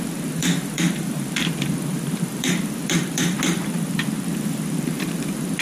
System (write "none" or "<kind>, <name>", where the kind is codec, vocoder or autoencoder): vocoder, BigVGAN v2